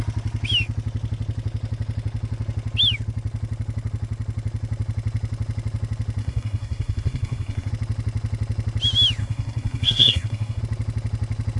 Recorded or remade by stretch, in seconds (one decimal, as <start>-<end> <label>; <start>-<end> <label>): 0.0-6.2 recorded; 6.2-7.7 remade; 7.7-9.2 recorded; 9.2-10.6 remade; 10.6-11.6 recorded

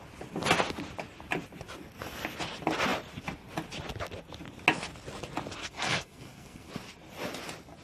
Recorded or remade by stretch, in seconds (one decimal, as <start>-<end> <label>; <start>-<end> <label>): 0.0-5.6 recorded; 5.6-6.7 remade; 6.7-7.8 recorded

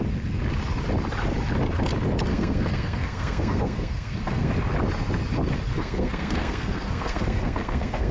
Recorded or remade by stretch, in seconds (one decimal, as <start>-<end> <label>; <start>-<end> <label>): 0.0-2.3 recorded; 2.3-4.5 remade; 4.5-5.7 recorded; 5.7-8.1 remade

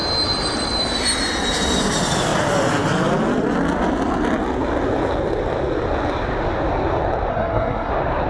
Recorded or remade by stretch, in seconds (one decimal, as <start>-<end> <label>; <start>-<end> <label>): 0.0-7.3 recorded; 7.3-7.9 remade; 7.9-8.3 recorded

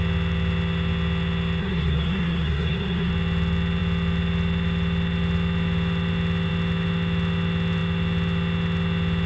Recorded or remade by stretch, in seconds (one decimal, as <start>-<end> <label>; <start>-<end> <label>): 0.0-1.6 recorded; 1.6-3.1 remade; 3.1-9.3 recorded

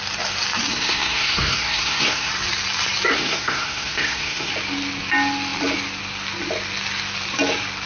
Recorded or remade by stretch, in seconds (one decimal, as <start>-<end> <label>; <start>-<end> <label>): 0.0-0.7 recorded; 0.7-2.3 remade; 2.3-3.1 recorded; 3.1-4.5 remade; 4.5-7.9 recorded